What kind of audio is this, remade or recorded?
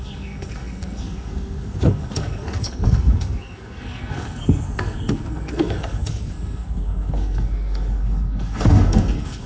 remade